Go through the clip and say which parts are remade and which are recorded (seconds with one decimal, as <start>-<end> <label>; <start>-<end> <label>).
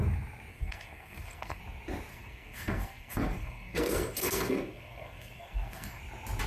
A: 0.0-0.5 recorded; 0.5-1.6 remade; 1.6-2.1 recorded; 2.1-6.0 remade; 6.0-6.5 recorded